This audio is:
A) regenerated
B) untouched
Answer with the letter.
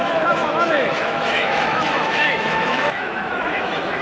A